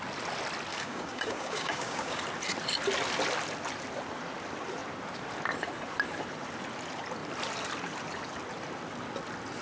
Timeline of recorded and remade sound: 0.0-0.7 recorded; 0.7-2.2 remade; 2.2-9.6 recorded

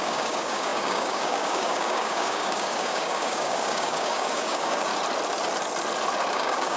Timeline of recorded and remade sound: 0.0-4.9 remade; 4.9-6.3 recorded; 6.3-6.8 remade

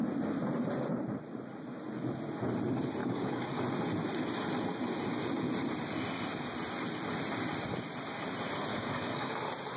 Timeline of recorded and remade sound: 0.0-3.0 recorded; 3.0-3.6 remade; 3.6-8.7 recorded; 8.7-9.3 remade; 9.3-9.8 recorded